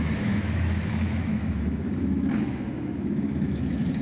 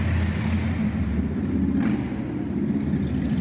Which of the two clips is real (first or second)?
second